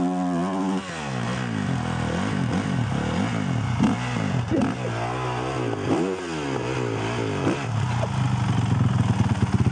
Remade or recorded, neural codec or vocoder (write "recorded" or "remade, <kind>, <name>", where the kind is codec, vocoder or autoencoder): recorded